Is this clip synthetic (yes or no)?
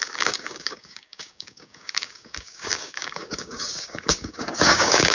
yes